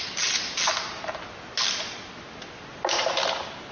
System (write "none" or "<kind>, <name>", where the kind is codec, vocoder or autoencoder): none